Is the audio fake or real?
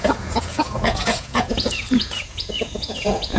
fake